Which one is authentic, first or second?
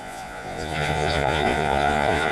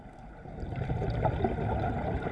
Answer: second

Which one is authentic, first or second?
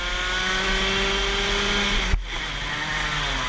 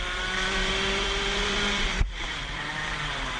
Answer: first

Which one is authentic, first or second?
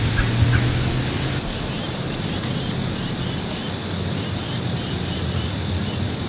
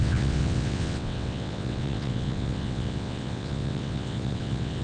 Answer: first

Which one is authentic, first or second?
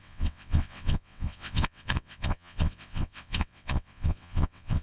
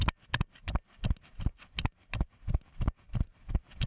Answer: second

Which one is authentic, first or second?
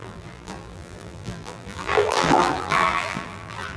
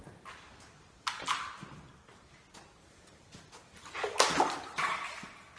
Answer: second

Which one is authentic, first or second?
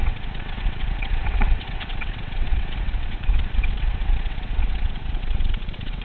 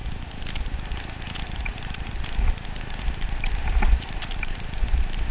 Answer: second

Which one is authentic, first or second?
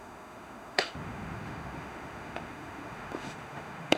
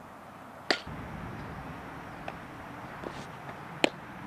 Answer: second